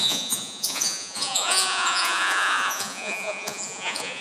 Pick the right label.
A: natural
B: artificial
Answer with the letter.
B